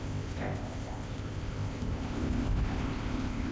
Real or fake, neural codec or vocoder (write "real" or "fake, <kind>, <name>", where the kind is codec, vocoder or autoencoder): fake, codec, ZipCodec